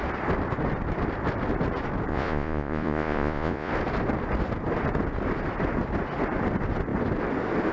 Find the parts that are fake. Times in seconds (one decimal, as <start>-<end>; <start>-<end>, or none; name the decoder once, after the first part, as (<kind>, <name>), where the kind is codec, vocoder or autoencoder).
2.1-3.7 (vocoder, Vocos)